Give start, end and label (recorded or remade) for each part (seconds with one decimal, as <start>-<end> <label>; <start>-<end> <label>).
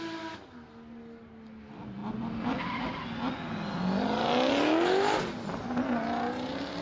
0.0-6.8 recorded